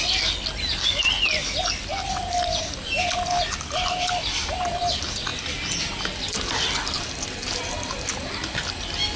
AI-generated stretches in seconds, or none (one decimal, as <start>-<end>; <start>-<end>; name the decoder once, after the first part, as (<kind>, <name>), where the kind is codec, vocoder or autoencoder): none